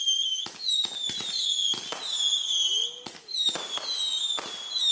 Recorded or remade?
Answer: recorded